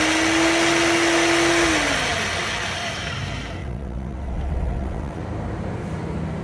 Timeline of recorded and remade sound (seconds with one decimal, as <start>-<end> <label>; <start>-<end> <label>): 0.0-3.6 recorded; 3.6-5.2 remade; 5.2-6.4 recorded